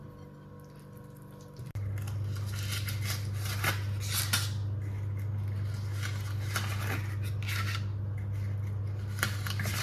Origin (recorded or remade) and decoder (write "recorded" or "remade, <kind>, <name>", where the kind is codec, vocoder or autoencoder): recorded